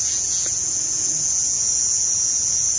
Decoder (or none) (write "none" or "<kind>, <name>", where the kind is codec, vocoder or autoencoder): vocoder, Vocos